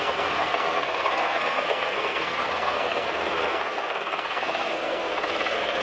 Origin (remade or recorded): remade